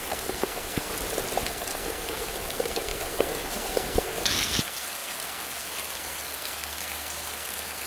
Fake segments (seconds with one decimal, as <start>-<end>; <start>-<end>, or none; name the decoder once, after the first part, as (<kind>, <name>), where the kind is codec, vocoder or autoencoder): 0.0-0.9 (codec, SNAC); 1.5-7.9

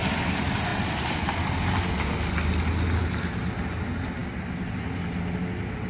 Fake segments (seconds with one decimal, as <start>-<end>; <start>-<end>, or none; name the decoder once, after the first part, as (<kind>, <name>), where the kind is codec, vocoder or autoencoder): none